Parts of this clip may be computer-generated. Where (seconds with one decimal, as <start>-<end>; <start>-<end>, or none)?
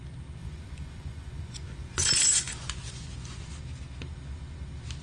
0.4-3.4